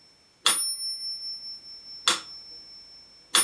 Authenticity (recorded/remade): recorded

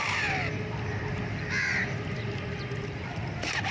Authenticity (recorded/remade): recorded